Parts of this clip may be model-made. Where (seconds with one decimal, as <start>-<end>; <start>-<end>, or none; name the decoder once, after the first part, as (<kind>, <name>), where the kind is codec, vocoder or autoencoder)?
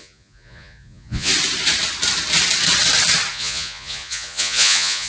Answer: 0.0-1.3 (vocoder, Vocos); 3.3-5.1